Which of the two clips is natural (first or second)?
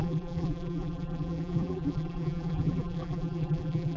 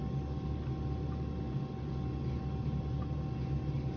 second